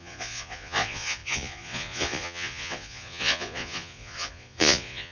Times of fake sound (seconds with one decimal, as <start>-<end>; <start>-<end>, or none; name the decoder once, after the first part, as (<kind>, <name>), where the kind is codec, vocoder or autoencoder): 0.0-5.1 (vocoder, Vocos)